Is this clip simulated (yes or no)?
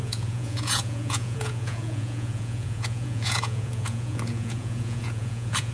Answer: yes